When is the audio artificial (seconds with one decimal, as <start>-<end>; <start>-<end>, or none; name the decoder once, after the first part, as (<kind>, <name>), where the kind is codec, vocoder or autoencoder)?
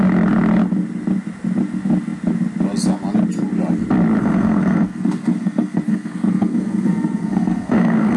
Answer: 4.2-8.2 (codec, SNAC)